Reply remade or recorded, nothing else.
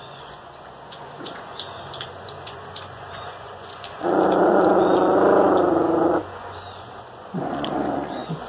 remade